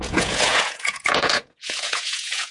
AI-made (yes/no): yes